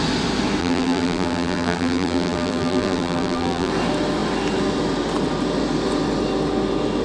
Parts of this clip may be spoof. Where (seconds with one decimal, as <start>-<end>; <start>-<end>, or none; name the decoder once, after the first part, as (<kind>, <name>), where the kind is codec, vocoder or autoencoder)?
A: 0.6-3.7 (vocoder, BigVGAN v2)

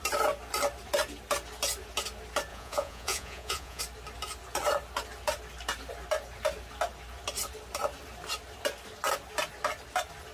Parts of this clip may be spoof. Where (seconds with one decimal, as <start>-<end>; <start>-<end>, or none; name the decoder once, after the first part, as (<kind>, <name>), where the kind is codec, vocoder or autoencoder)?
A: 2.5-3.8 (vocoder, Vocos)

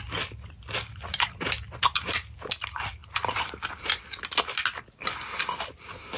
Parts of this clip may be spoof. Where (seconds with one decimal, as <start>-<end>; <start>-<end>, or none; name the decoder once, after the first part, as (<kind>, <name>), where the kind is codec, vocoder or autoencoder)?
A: 3.0-3.5 (vocoder, BigVGAN v2)

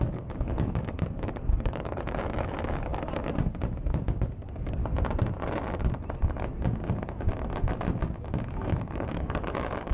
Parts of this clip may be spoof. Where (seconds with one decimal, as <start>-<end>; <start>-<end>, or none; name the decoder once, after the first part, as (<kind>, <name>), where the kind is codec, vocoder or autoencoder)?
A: 0.0-2.9 (codec, DAC); 4.3-4.8; 8.5-9.9

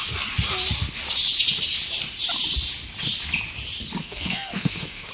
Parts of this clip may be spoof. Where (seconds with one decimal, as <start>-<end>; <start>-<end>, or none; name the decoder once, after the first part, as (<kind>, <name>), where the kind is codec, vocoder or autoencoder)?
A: 4.0-5.1 (codec, SNAC)

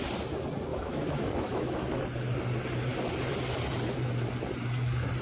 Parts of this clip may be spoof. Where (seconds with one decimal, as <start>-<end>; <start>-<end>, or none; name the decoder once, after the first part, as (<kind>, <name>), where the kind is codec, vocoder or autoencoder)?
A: 0.7-2.0 (autoencoder, DAC-VAE)